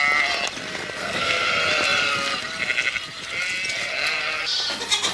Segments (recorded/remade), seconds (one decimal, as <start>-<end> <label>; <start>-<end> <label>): 0.0-1.0 recorded; 1.0-1.5 remade; 1.5-5.1 recorded